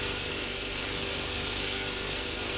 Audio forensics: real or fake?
fake